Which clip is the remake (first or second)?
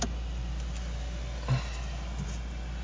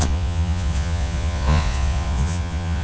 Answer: second